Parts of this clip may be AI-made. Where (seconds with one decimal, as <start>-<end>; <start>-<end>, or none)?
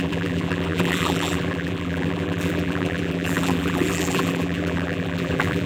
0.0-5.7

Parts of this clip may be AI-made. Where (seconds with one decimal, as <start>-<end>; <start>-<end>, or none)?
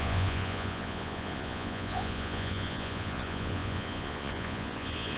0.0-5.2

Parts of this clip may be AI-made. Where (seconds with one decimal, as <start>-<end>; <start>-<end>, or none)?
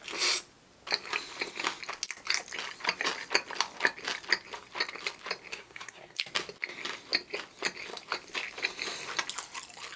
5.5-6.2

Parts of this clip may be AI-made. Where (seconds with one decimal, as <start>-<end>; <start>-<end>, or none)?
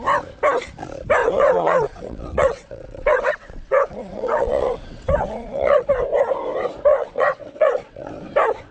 1.2-5.9; 6.9-8.1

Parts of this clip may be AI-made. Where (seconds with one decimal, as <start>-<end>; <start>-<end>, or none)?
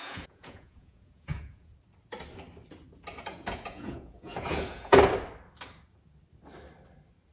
0.0-1.7; 3.3-5.0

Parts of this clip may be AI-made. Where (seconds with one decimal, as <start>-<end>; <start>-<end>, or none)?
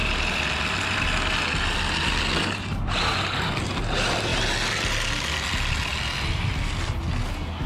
none